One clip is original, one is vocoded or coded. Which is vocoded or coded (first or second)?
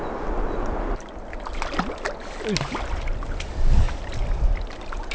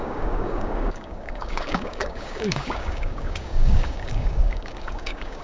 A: second